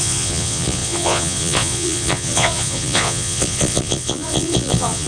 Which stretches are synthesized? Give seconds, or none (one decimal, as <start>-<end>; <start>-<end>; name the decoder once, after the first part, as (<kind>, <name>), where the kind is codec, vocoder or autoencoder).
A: 0.0-5.1 (vocoder, Vocos)